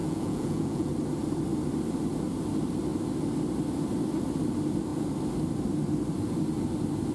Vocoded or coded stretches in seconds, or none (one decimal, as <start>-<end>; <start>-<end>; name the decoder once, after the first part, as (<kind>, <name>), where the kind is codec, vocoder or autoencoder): 0.0-0.9 (vocoder, Vocos)